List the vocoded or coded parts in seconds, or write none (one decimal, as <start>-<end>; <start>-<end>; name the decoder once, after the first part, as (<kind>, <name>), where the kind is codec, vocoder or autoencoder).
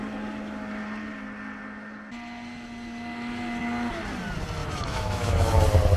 4.6-5.6 (autoencoder, DAC-VAE)